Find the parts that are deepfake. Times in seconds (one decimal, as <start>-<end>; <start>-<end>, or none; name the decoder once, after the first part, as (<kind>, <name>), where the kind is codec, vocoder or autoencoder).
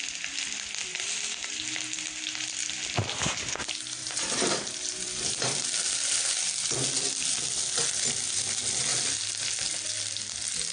0.9-1.5 (vocoder, BigVGAN v2); 4.0-6.3